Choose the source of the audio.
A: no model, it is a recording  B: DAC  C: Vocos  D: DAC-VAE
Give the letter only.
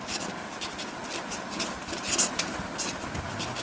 A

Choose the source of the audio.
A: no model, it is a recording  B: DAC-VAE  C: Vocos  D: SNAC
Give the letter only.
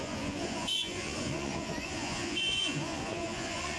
C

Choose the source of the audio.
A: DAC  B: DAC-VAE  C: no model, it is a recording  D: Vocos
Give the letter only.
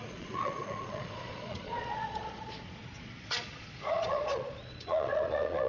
D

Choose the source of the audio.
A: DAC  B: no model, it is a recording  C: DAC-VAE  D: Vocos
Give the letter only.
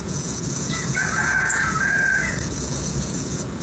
D